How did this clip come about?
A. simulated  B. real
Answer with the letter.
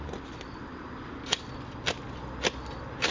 B